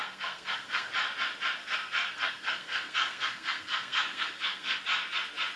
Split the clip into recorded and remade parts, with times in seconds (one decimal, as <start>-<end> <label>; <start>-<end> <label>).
0.0-0.9 remade; 0.9-1.6 recorded; 1.6-4.8 remade; 4.8-5.6 recorded